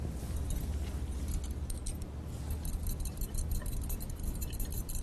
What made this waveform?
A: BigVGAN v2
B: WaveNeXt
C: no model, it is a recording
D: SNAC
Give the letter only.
C